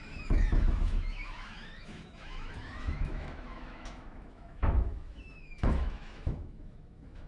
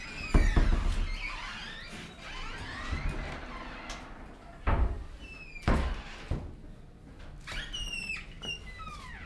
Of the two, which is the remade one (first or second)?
first